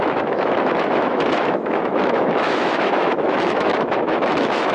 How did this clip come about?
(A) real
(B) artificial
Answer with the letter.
B